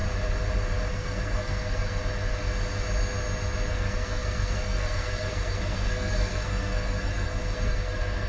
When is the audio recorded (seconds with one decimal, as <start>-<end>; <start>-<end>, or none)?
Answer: 0.0-0.9; 2.0-3.7